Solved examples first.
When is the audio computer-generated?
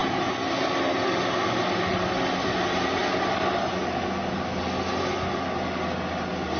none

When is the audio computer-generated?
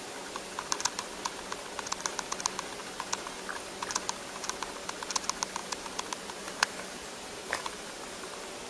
2.8-3.3 (vocoder, BigVGAN v2); 5.6-7.9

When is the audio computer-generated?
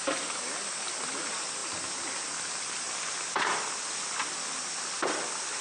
none